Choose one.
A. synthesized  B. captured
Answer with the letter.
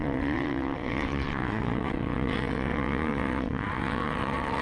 A